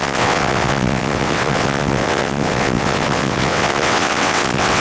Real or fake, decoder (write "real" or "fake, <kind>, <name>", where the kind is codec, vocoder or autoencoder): fake, vocoder, WaveNeXt